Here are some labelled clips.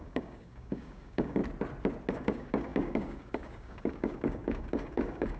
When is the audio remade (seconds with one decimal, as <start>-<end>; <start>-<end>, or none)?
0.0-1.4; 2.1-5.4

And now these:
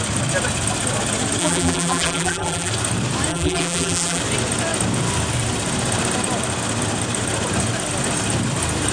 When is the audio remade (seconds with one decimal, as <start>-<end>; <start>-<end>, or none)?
1.4-2.7; 3.3-4.2

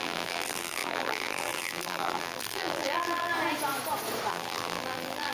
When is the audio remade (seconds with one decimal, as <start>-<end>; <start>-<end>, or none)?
0.0-3.3; 4.3-5.3

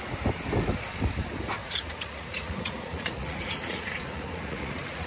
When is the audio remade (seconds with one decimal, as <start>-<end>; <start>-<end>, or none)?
1.6-5.1

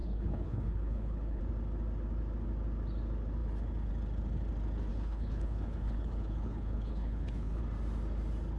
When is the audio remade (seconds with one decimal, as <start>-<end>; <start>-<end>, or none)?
0.0-1.4; 4.9-7.6

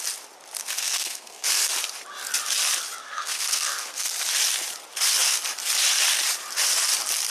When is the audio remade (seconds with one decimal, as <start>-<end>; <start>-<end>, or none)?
0.6-1.7; 3.0-4.1